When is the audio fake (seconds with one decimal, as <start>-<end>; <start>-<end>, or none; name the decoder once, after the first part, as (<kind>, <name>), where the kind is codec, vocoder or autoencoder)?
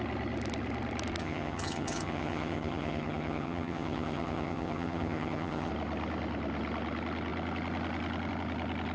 1.2-5.7 (vocoder, HiFi-GAN)